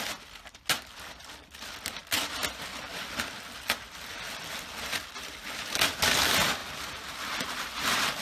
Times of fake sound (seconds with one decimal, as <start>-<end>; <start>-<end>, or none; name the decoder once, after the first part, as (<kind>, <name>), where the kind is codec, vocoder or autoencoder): none